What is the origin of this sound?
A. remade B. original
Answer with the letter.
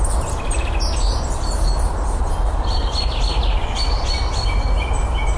B